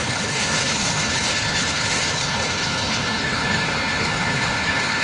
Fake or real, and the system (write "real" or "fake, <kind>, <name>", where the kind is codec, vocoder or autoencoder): fake, codec, HILCodec